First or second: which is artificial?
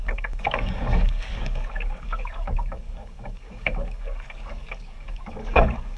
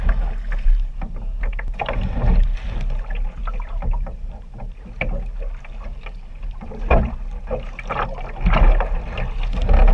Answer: first